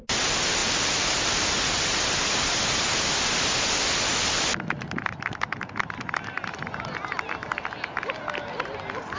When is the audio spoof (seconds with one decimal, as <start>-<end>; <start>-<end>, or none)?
none